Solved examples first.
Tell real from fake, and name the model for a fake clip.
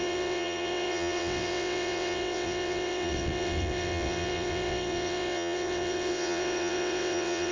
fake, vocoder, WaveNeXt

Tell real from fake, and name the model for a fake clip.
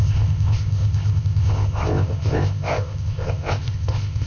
fake, codec, ZipCodec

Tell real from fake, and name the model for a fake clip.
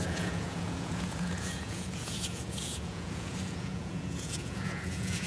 fake, vocoder, Vocos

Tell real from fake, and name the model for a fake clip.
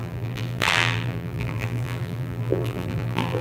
fake, vocoder, BigVGAN v2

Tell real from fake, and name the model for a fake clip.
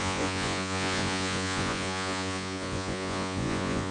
fake, vocoder, Vocos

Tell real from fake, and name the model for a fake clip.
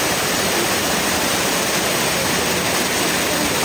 real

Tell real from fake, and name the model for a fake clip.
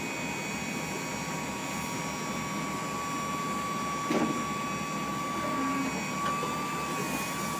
real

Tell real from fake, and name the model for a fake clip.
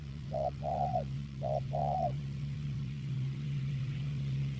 fake, vocoder, WaveNeXt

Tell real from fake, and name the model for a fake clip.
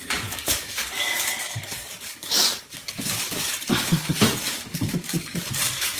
fake, codec, DAC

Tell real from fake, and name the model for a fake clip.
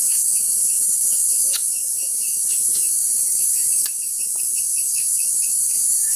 fake, codec, DAC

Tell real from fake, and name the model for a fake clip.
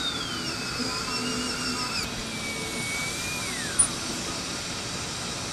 real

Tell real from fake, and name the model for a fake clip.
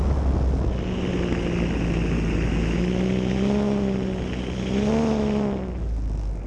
real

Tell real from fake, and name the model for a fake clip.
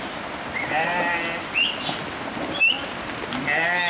real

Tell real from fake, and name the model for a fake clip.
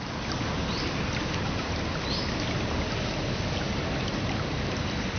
real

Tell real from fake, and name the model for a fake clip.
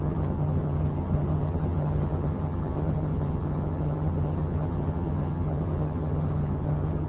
fake, vocoder, HiFi-GAN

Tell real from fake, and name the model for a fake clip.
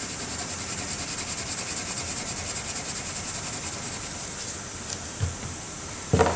real